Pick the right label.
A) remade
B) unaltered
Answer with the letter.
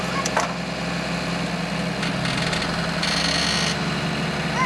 B